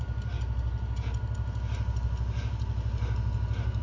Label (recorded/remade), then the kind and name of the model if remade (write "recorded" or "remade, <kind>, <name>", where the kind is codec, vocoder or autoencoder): recorded